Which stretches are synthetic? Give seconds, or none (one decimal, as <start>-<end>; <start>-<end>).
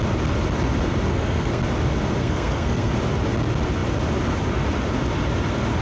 1.1-1.6; 2.2-2.9